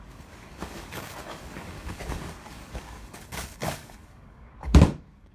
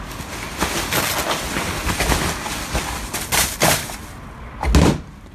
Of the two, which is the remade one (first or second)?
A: first